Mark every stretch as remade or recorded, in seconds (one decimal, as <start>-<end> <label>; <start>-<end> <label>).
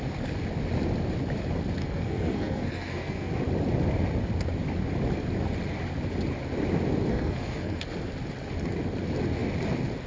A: 0.0-1.8 recorded; 1.8-3.3 remade; 3.3-7.1 recorded; 7.1-7.8 remade; 7.8-10.1 recorded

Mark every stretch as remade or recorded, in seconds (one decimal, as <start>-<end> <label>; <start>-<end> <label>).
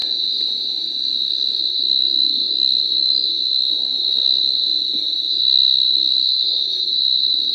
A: 0.0-1.3 recorded; 1.3-4.6 remade; 4.6-5.4 recorded; 5.4-7.5 remade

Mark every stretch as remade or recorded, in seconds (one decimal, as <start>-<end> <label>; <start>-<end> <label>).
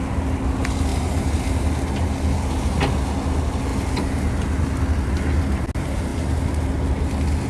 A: 0.0-0.9 recorded; 0.9-1.7 remade; 1.7-3.7 recorded; 3.7-4.4 remade; 4.4-7.5 recorded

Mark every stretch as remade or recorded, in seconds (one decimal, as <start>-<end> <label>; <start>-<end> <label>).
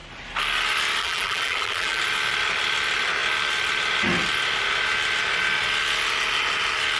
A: 0.0-1.0 recorded; 1.0-2.0 remade; 2.0-7.0 recorded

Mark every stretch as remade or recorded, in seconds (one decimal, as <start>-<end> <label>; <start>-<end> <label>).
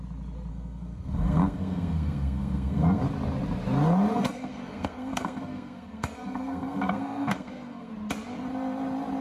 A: 0.0-0.5 recorded; 0.5-3.0 remade; 3.0-4.1 recorded; 4.1-7.9 remade; 7.9-9.2 recorded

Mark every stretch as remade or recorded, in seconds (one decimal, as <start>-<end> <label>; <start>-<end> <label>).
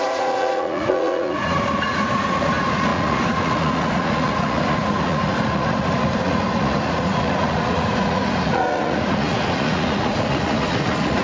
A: 0.0-11.2 remade